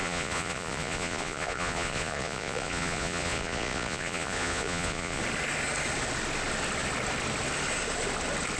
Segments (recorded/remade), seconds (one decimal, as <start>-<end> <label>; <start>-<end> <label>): 0.0-5.2 remade; 5.2-8.6 recorded